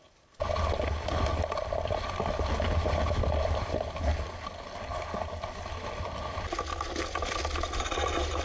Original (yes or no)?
yes